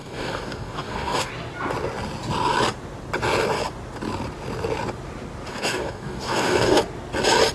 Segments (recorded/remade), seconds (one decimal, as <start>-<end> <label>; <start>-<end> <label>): 0.0-1.3 remade; 1.3-5.5 recorded; 5.5-6.8 remade; 6.8-7.5 recorded